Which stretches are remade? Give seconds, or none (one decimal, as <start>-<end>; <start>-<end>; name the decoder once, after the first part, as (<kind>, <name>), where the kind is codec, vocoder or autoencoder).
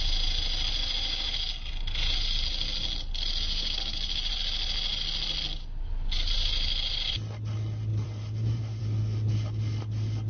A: 7.9-8.8 (vocoder, BigVGAN v2)